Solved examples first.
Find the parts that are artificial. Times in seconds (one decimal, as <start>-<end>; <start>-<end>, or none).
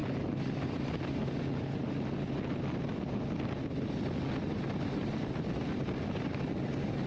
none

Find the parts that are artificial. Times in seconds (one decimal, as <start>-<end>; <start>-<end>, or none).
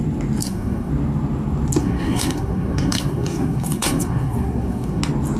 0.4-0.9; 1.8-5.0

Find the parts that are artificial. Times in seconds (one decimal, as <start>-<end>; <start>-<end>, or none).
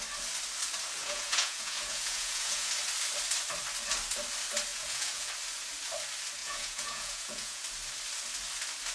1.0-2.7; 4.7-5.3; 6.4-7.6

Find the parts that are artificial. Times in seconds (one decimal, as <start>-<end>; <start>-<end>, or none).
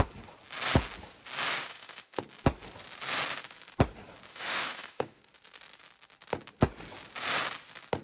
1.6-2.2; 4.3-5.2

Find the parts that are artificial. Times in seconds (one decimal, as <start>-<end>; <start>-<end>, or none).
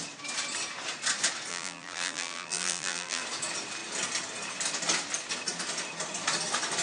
1.5-3.2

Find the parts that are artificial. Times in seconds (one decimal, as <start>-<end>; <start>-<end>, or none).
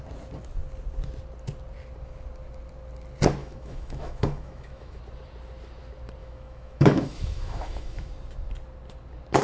3.4-5.0; 6.2-8.1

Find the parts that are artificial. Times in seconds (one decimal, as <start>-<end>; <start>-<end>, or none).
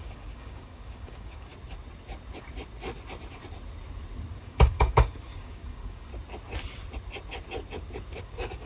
0.0-1.5; 4.3-6.1; 8.2-8.7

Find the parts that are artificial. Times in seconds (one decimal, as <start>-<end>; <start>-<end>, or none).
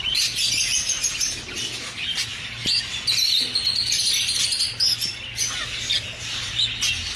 none